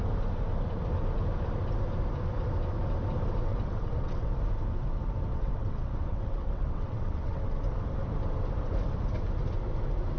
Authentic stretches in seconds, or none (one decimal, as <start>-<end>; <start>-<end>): 0.0-3.5; 4.3-5.3; 7.4-10.2